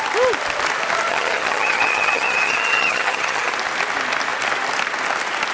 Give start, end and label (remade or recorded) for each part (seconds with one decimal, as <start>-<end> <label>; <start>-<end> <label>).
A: 0.0-1.1 recorded; 1.1-3.5 remade; 3.5-5.5 recorded